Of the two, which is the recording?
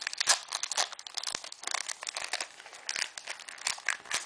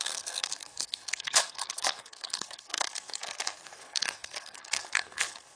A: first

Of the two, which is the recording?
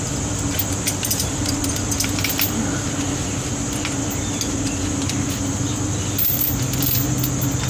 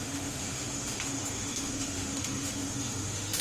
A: first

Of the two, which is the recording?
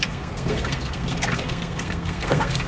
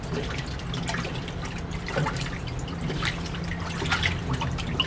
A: second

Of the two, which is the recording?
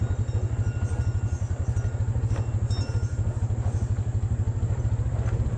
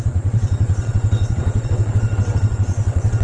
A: first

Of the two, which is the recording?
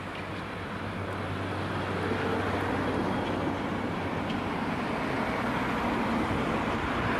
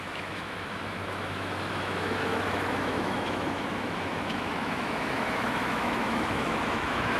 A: first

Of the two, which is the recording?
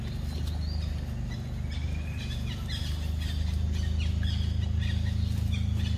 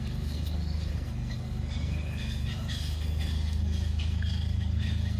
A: first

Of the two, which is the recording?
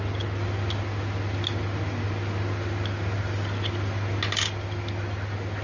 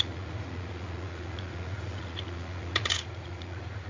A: first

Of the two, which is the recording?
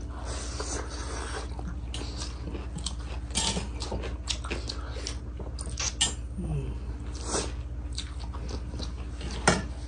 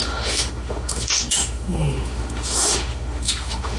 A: first